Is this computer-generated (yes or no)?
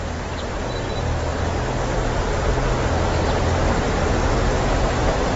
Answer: no